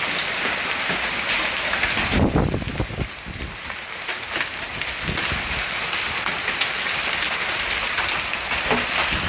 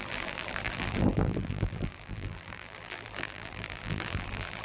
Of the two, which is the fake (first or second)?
second